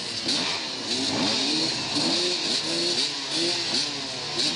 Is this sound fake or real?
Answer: real